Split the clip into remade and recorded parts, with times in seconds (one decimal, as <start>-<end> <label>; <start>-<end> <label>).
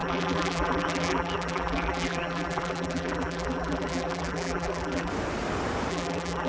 0.0-5.1 remade; 5.1-5.9 recorded; 5.9-6.5 remade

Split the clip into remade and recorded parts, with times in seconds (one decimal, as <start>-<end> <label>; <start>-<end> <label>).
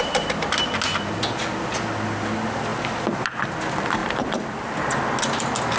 0.0-4.0 recorded; 4.0-4.8 remade; 4.8-5.8 recorded